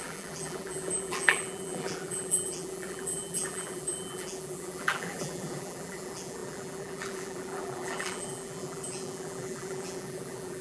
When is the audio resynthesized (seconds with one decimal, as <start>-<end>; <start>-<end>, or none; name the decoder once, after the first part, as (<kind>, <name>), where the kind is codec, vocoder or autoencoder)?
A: 0.0-10.6 (vocoder, BigVGAN v2)